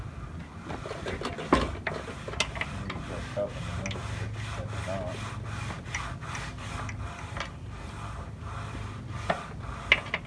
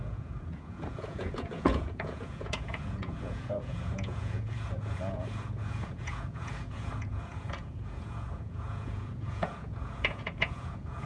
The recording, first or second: first